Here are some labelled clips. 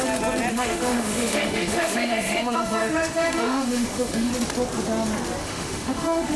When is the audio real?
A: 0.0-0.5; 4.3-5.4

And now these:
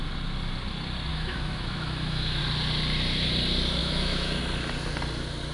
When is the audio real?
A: 0.0-1.1; 2.4-3.8; 4.4-5.5

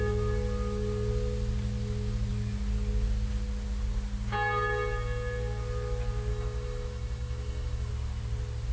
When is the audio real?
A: 0.0-6.3; 7.9-8.7

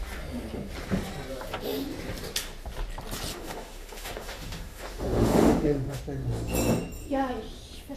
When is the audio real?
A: 0.0-3.3; 6.0-8.0

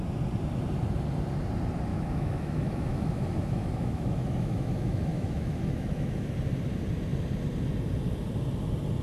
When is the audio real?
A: 0.0-1.9; 6.3-9.0

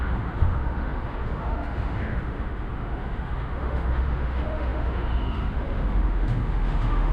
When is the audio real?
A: none

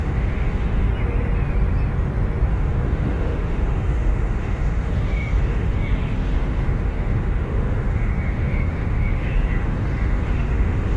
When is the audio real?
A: 0.9-2.5

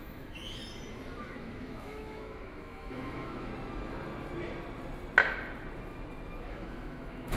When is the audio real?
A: 0.6-1.2; 3.5-6.5